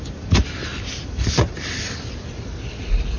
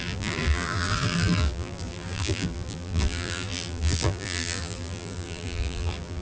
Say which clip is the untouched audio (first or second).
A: first